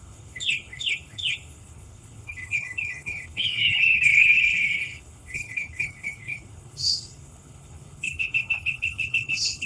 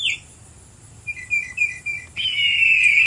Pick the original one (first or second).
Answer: second